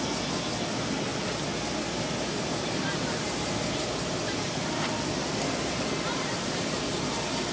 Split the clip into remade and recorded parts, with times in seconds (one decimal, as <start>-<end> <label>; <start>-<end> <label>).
0.0-7.5 recorded